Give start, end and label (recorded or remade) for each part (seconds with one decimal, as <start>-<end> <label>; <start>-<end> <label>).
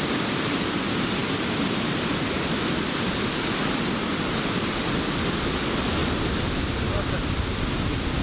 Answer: 0.0-8.2 recorded